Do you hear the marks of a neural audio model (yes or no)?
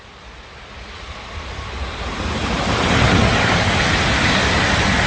no